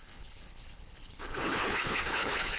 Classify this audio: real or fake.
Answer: fake